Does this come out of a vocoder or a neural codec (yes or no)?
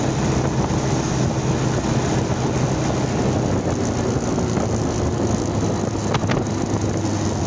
no